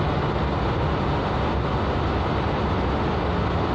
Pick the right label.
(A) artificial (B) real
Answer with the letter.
B